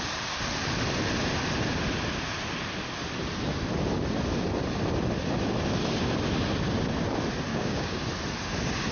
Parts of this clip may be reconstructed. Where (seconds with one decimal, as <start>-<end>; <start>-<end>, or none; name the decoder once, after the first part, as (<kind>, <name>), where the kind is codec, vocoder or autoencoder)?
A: 7.5-8.0 (codec, DAC)